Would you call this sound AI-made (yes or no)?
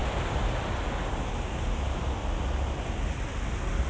no